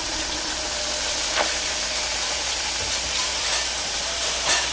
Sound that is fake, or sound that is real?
fake